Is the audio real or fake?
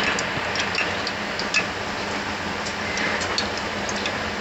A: real